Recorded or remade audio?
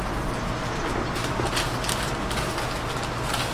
recorded